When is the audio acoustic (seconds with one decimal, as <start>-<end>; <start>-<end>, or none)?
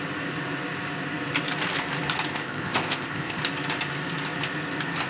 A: 0.0-2.3; 3.4-5.1